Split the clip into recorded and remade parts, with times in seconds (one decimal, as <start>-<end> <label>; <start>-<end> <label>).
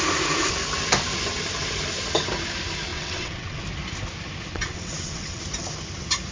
0.0-2.9 recorded; 2.9-3.6 remade; 3.6-4.5 recorded; 4.5-5.4 remade; 5.4-6.3 recorded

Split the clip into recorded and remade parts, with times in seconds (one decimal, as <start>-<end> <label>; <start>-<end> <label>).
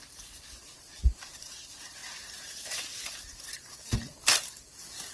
0.0-5.1 recorded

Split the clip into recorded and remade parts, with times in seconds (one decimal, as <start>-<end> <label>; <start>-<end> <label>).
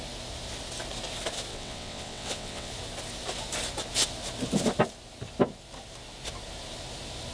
0.0-1.5 recorded; 1.5-2.7 remade; 2.7-7.3 recorded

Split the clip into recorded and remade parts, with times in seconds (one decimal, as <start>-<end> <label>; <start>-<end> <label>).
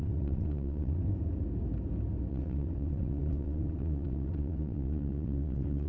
0.0-1.1 remade; 1.1-2.3 recorded; 2.3-5.9 remade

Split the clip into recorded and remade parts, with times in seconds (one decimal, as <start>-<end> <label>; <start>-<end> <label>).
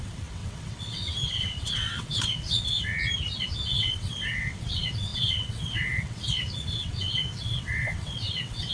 0.0-2.9 remade; 2.9-3.4 recorded; 3.4-8.7 remade